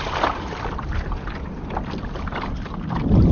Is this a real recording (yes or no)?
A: yes